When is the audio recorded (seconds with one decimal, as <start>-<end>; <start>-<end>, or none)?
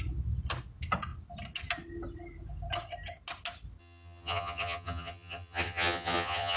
0.0-3.8